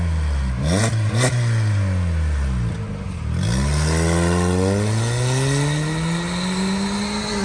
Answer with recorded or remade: recorded